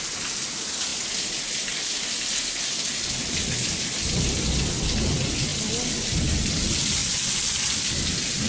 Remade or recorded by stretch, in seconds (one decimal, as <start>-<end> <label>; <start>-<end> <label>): 0.0-8.5 recorded